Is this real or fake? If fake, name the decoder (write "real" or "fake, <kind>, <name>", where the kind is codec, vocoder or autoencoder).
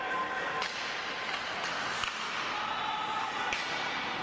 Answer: real